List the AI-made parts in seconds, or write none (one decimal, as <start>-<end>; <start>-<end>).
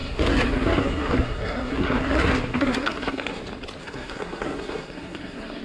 0.0-3.4; 3.8-5.6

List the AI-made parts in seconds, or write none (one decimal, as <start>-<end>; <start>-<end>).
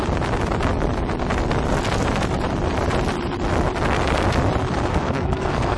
4.9-5.8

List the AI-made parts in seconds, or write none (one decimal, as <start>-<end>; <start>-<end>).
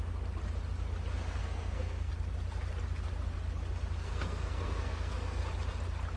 1.4-2.1; 4.0-5.4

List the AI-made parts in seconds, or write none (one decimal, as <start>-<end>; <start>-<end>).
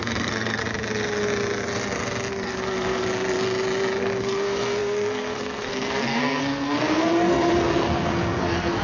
0.0-0.6; 2.3-3.1; 4.0-8.8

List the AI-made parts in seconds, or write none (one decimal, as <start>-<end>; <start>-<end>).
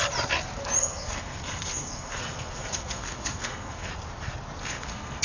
0.8-3.9; 4.6-5.2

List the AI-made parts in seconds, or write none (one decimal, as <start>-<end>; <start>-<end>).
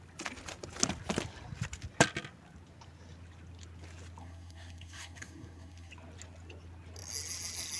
4.2-5.9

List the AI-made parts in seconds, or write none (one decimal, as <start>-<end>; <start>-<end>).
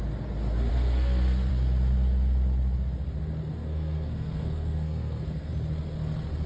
0.7-1.5; 3.5-5.5